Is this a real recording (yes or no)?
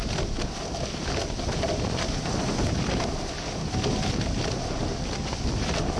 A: yes